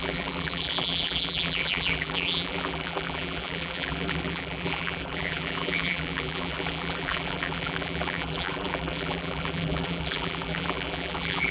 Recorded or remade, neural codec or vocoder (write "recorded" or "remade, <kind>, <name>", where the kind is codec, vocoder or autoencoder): remade, vocoder, BigVGAN v2